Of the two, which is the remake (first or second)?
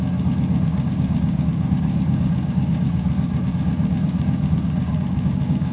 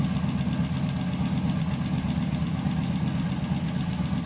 first